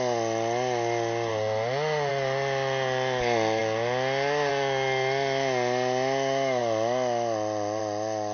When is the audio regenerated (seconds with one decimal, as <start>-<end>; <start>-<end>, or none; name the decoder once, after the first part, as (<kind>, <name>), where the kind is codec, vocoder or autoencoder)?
none